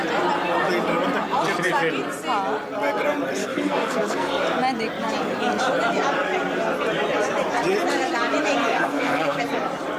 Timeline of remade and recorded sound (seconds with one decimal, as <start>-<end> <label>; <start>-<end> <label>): 0.0-3.4 recorded; 3.4-4.4 remade; 4.4-8.6 recorded; 8.6-9.4 remade; 9.4-10.0 recorded